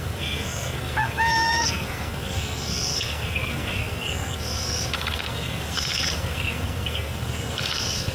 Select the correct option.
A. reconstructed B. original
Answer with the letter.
A